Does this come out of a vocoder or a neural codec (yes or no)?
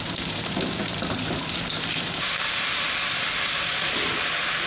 yes